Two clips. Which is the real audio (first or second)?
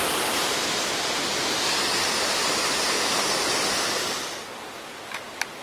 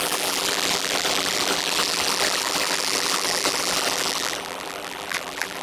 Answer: first